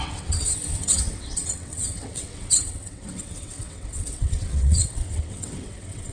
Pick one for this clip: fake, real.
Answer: fake